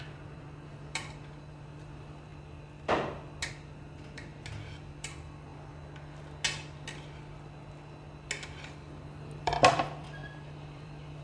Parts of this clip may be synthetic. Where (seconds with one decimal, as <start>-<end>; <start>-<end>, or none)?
0.0-2.3; 3.5-4.3; 4.9-5.5; 9.4-11.2